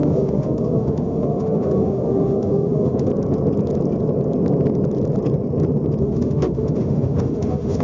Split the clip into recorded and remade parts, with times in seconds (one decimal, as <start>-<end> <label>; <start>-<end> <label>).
0.0-3.1 remade; 3.1-6.0 recorded; 6.0-7.8 remade